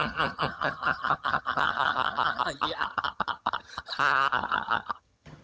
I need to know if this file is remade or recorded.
remade